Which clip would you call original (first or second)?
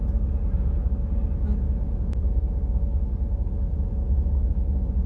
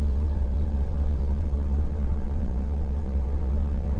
first